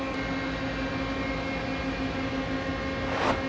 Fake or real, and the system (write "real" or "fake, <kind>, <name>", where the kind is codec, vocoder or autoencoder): real